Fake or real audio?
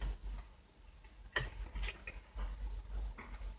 real